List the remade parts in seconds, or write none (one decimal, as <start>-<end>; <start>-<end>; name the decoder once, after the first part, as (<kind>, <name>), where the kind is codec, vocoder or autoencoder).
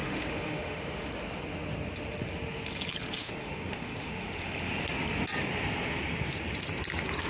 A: 0.0-1.1 (autoencoder, DAC-VAE); 3.2-4.7